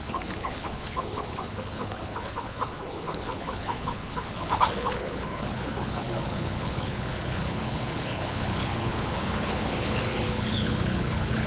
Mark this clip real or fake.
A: fake